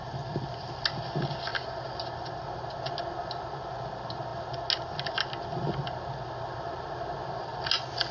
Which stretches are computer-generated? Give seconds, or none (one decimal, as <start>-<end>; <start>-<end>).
none